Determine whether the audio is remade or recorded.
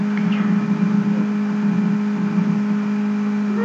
recorded